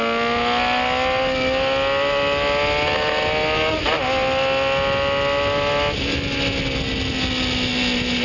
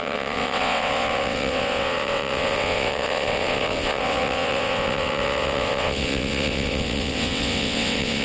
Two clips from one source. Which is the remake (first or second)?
second